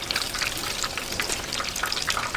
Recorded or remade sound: recorded